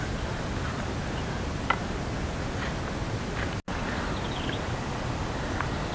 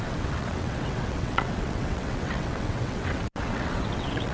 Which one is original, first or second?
first